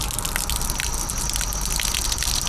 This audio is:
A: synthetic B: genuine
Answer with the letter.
B